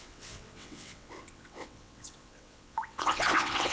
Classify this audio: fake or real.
fake